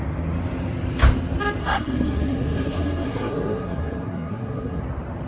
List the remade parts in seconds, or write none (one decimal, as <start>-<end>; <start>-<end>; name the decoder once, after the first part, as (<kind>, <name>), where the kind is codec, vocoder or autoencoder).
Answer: 1.6-4.8 (codec, SNAC)